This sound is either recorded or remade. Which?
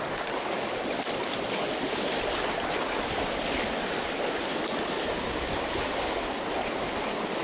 recorded